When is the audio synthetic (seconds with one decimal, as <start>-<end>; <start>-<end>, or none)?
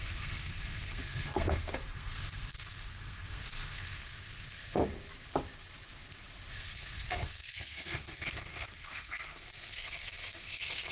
0.0-4.8; 6.5-10.9